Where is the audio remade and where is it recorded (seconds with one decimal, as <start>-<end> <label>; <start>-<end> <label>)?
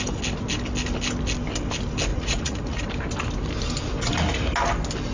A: 0.0-2.1 recorded; 2.1-2.8 remade; 2.8-5.1 recorded